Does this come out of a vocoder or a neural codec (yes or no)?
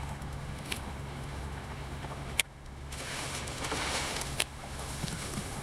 yes